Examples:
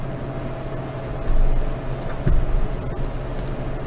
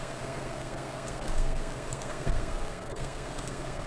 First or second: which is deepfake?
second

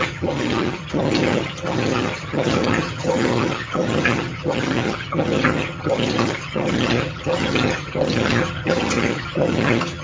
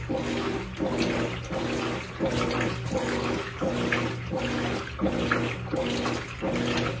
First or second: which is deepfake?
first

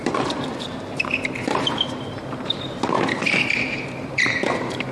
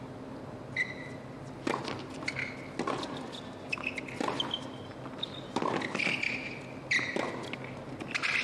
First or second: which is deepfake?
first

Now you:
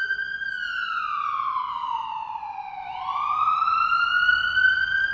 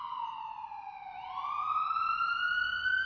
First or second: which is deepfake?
first